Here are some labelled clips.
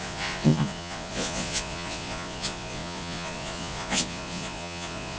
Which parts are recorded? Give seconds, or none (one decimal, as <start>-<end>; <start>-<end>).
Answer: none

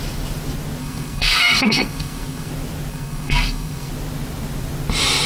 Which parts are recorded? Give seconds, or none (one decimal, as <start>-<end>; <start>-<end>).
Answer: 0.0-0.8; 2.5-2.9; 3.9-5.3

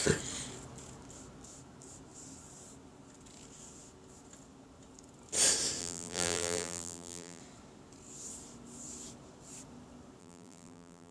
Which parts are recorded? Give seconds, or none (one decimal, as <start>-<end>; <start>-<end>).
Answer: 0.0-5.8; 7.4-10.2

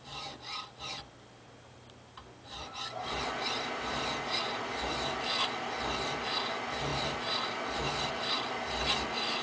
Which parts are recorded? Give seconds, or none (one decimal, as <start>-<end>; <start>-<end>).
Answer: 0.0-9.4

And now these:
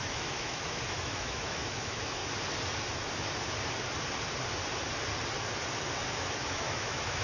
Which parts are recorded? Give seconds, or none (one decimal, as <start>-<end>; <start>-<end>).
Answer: 2.2-6.1

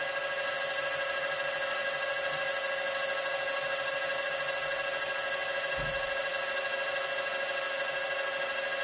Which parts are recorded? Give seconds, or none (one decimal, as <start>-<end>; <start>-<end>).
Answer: 0.0-8.8

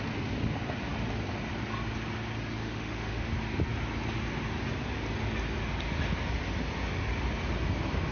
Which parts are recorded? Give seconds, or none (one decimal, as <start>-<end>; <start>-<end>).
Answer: 0.0-2.6; 3.3-8.1